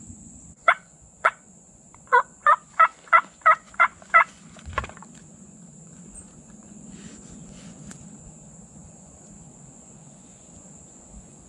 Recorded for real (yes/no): no